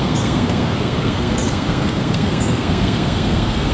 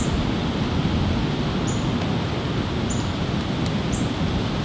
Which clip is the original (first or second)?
second